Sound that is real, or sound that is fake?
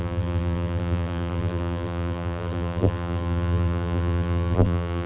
fake